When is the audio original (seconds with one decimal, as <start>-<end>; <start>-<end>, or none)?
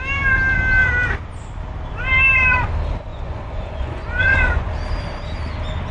0.0-3.1; 4.7-5.9